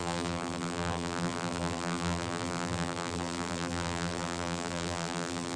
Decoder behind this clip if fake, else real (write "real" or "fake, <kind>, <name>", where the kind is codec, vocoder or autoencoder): fake, vocoder, BigVGAN v2